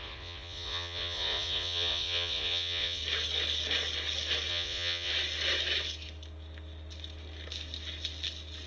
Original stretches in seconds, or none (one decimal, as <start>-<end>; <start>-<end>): 3.0-4.5; 5.1-8.7